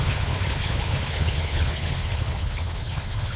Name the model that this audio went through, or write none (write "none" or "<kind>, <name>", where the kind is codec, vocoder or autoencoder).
codec, HILCodec